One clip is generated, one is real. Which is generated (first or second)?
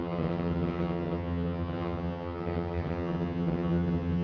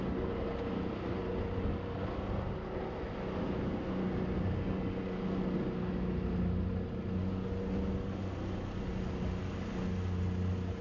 first